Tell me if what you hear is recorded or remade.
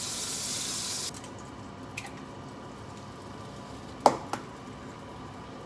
recorded